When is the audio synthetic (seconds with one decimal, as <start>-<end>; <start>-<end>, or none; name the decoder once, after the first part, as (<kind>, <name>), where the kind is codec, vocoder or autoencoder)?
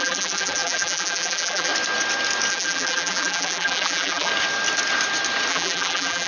0.0-1.7 (vocoder, BigVGAN v2); 2.5-4.3; 5.5-6.3